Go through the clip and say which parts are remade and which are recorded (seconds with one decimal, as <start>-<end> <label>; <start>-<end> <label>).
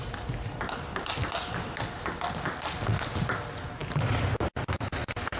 0.0-5.4 recorded